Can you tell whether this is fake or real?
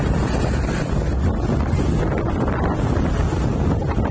real